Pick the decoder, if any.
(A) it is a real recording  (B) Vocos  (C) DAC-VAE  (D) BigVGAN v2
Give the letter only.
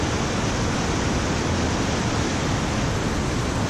A